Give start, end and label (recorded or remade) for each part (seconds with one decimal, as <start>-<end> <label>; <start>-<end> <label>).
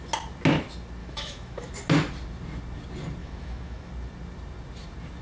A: 0.0-1.0 recorded; 1.0-1.7 remade; 1.7-3.2 recorded; 3.2-3.9 remade; 3.9-5.2 recorded